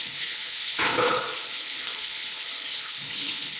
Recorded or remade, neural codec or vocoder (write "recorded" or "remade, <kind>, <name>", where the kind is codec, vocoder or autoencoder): remade, codec, HILCodec